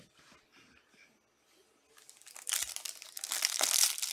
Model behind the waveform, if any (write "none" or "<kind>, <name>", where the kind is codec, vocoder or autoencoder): none